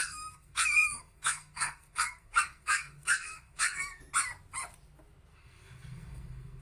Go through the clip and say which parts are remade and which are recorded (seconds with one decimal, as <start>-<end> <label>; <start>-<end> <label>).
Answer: 0.0-4.0 remade; 4.0-5.3 recorded; 5.3-6.6 remade

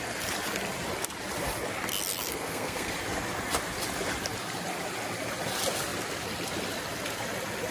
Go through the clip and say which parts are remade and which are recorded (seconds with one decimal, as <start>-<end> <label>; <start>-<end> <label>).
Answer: 0.0-2.3 recorded; 2.3-2.9 remade; 2.9-7.7 recorded

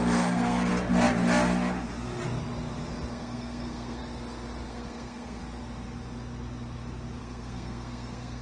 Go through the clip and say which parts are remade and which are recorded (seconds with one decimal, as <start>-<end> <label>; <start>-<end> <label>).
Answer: 0.0-0.7 remade; 0.7-3.1 recorded; 3.1-4.0 remade; 4.0-4.7 recorded; 4.7-5.4 remade; 5.4-7.2 recorded; 7.2-8.4 remade

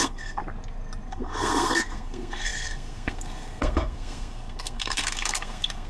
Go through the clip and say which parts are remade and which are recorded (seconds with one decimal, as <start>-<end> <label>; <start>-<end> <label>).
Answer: 0.0-0.4 remade; 0.4-1.1 recorded; 1.1-5.9 remade

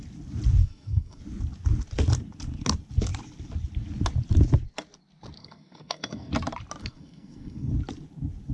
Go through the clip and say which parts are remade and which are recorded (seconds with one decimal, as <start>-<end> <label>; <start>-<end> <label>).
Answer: 0.0-0.6 recorded; 0.6-1.2 remade; 1.2-5.4 recorded; 5.4-6.3 remade; 6.3-6.8 recorded; 6.8-7.7 remade; 7.7-8.5 recorded

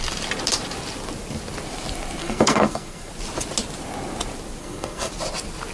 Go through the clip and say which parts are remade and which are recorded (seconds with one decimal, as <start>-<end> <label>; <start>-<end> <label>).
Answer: 0.0-2.2 recorded; 2.2-3.1 remade; 3.1-4.6 recorded; 4.6-5.1 remade; 5.1-5.7 recorded

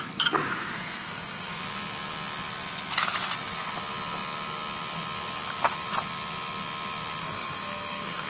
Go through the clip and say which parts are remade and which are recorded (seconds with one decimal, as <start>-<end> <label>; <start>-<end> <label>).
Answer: 0.0-0.5 recorded; 0.5-1.6 remade; 1.6-7.2 recorded; 7.2-8.3 remade